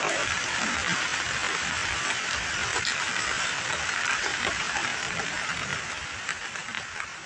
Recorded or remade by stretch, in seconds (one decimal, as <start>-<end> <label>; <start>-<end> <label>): 0.0-2.7 recorded; 2.7-5.2 remade; 5.2-7.3 recorded